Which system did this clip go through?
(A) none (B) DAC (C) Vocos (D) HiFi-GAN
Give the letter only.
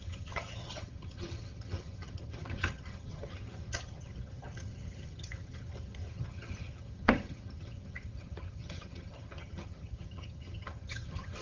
D